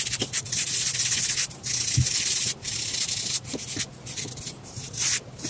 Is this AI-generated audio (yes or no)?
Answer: no